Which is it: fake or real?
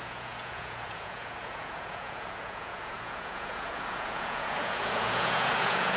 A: fake